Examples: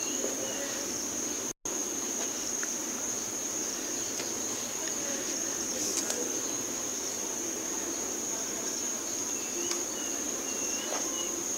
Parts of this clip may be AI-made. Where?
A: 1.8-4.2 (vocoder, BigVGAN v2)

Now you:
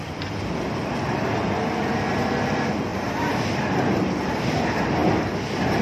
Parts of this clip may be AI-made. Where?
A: 0.0-5.8 (vocoder, BigVGAN v2)

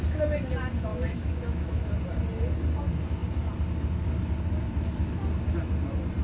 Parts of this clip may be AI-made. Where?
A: 0.9-1.8 (autoencoder, DAC-VAE)

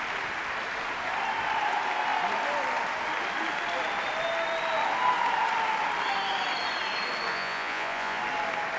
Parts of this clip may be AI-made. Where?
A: 7.3-8.2 (vocoder, Vocos)